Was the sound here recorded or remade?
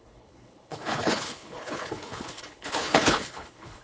remade